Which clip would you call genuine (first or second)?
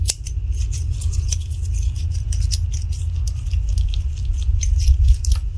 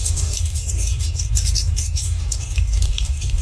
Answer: first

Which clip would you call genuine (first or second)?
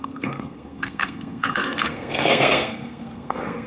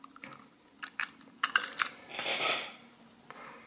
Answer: second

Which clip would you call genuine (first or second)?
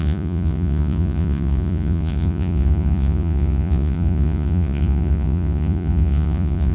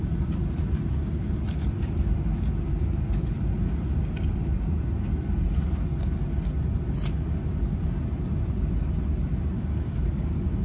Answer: second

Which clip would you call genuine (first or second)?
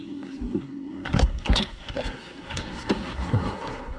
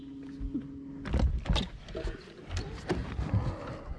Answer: second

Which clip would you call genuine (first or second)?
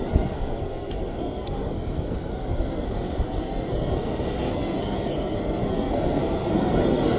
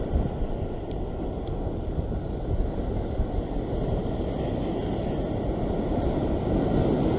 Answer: second